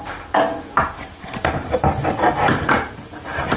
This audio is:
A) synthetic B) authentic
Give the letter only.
A